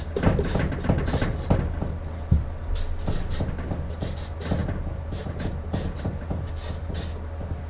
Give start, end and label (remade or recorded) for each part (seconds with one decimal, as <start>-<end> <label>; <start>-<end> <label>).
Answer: 0.0-7.7 recorded